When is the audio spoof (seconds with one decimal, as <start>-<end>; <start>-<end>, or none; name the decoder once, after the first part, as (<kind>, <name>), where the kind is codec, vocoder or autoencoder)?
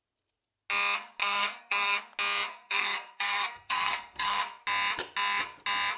1.2-2.0 (codec, SNAC); 2.5-4.4